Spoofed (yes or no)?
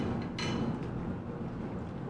no